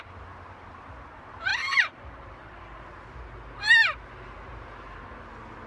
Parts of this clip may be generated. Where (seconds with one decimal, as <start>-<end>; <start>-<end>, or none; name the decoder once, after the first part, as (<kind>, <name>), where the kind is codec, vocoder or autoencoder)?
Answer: 1.5-2.8 (vocoder, BigVGAN v2)

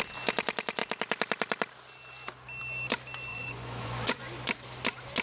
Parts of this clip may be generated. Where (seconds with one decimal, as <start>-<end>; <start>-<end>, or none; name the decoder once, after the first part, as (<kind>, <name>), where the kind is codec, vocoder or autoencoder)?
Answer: 3.3-4.2 (vocoder, Vocos)